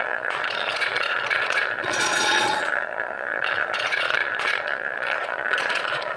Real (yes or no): no